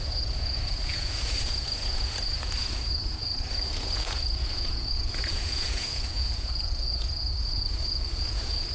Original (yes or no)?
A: no